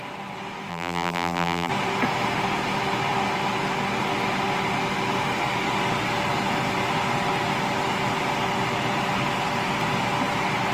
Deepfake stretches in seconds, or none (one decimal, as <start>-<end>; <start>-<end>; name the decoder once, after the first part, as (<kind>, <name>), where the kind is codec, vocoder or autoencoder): 0.7-1.7 (vocoder, BigVGAN v2)